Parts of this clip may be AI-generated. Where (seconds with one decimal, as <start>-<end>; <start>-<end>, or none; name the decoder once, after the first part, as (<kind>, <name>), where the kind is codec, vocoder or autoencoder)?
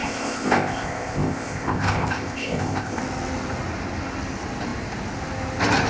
0.0-3.0 (codec, ZipCodec)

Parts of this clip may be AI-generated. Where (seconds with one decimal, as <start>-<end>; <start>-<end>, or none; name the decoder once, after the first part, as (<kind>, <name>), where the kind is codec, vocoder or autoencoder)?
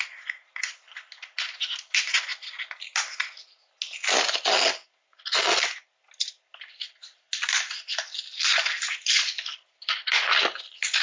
none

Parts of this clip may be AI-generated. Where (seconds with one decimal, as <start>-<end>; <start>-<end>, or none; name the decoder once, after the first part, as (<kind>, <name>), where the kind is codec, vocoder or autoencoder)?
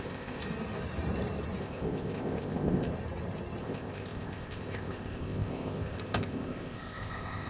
0.0-0.4 (codec, ZipCodec); 1.6-2.9; 3.6-7.5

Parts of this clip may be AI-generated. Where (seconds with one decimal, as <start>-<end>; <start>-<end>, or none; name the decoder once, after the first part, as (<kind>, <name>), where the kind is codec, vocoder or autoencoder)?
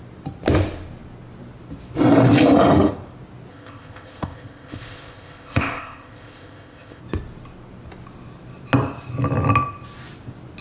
3.5-7.0 (codec, ZipCodec)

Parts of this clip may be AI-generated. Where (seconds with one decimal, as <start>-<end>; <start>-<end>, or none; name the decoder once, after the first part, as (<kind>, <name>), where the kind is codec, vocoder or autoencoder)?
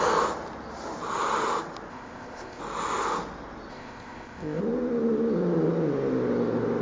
1.9-2.6 (codec, ZipCodec); 3.7-4.6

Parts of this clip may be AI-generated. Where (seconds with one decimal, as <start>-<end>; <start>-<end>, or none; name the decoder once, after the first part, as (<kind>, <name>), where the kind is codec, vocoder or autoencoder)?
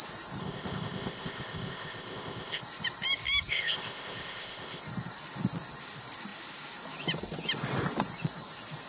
0.4-2.6 (codec, ZipCodec); 3.5-4.8